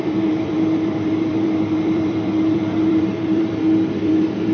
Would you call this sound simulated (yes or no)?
yes